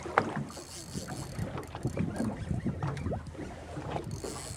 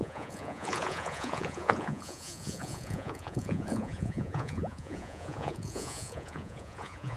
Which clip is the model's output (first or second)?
second